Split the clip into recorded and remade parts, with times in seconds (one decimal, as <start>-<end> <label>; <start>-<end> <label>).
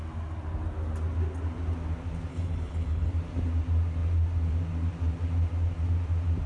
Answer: 0.0-2.3 recorded; 2.3-3.1 remade; 3.1-6.5 recorded